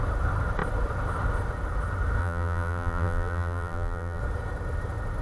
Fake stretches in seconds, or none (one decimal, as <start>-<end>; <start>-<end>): 2.2-4.2